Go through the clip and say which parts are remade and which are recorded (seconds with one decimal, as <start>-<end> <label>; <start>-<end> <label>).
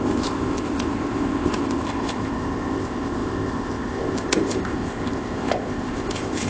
0.0-6.5 remade